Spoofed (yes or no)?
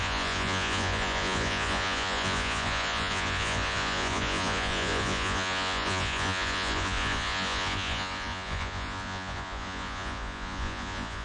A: yes